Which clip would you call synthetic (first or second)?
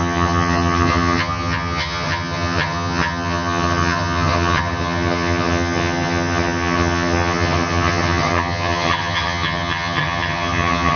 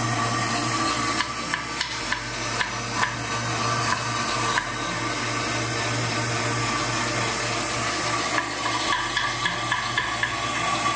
first